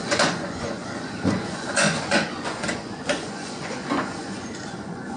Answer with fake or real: fake